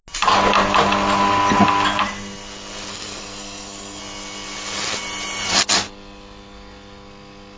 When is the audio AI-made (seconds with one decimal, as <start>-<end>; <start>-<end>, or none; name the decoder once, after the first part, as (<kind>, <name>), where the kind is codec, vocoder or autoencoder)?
2.9-4.0 (codec, SNAC)